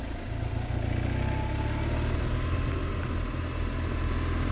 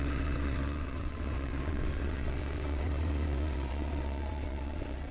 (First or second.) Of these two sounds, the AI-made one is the second